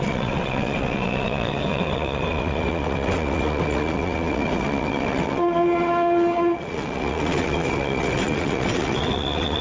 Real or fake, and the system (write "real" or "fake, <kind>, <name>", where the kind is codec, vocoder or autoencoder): fake, vocoder, WaveNeXt